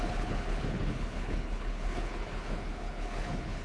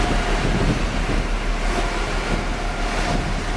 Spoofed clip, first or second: first